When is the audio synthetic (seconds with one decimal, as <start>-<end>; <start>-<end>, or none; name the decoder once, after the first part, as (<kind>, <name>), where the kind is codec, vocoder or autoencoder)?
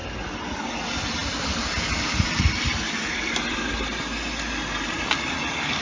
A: none